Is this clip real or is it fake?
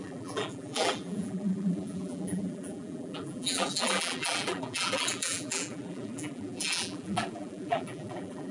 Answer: fake